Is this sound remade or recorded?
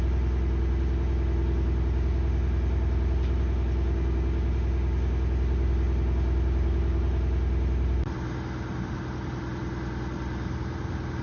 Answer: recorded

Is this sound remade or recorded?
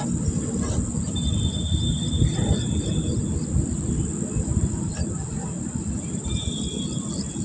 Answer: recorded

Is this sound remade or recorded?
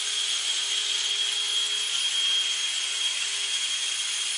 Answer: recorded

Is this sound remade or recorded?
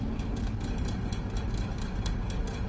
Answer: recorded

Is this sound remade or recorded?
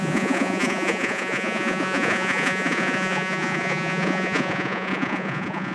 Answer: remade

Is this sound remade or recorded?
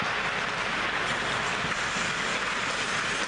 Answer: recorded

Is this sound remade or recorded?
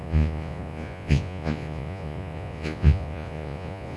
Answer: remade